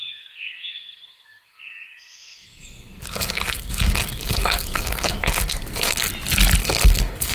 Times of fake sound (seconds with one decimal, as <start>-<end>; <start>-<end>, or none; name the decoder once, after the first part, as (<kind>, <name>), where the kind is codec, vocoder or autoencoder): 0.0-6.1 (codec, SNAC); 6.6-7.3